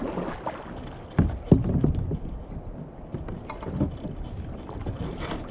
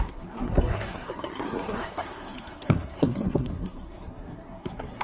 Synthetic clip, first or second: second